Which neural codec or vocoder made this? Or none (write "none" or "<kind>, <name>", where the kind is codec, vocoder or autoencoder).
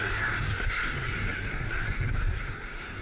codec, SNAC